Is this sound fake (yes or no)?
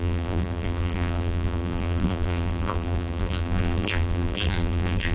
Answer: yes